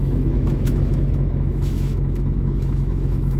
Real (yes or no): no